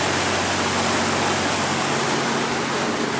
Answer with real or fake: real